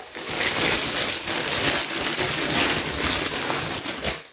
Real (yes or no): yes